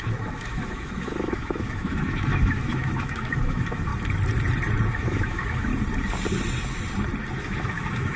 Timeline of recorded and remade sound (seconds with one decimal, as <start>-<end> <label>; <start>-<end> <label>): 0.0-3.9 remade; 3.9-4.9 recorded; 4.9-5.7 remade; 5.7-7.3 recorded; 7.3-8.2 remade